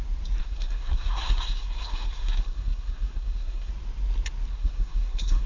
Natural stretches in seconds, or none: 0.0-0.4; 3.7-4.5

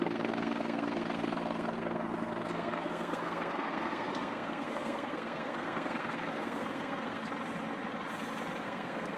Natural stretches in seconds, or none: 7.2-8.6